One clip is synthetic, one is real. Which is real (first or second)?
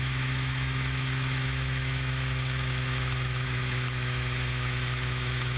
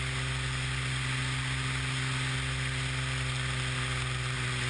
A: second